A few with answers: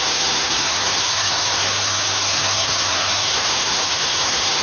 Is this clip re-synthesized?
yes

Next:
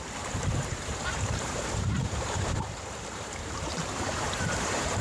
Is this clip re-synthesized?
yes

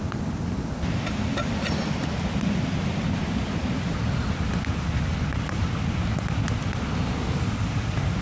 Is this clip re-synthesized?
no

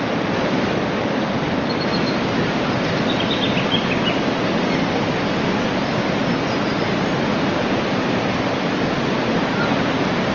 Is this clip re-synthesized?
no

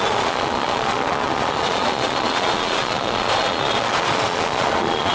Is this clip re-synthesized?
yes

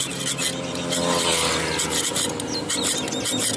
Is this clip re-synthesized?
no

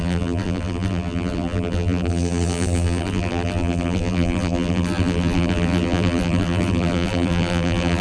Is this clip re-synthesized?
yes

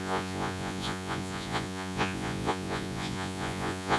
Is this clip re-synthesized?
yes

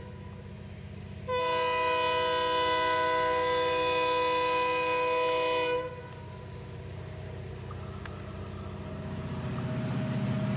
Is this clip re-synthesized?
no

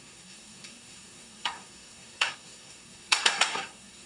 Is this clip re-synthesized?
yes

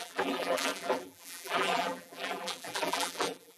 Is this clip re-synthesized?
yes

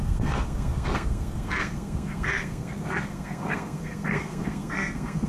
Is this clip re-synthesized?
yes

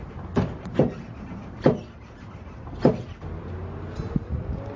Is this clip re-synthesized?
no